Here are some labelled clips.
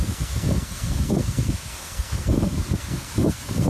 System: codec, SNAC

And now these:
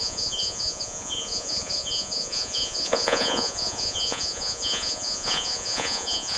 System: vocoder, Vocos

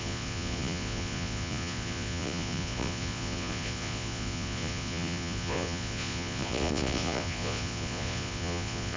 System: vocoder, Vocos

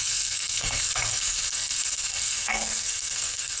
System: codec, SNAC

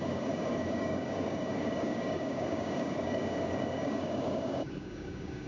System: codec, DAC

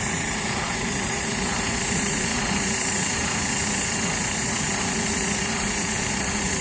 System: vocoder, Vocos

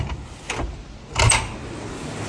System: none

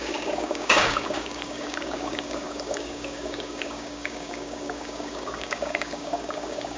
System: codec, DAC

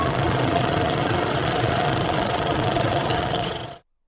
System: vocoder, Vocos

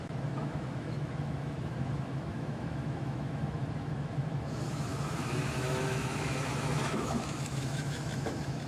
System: autoencoder, DAC-VAE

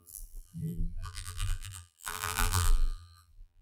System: vocoder, BigVGAN v2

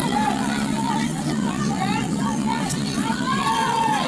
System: vocoder, WaveNeXt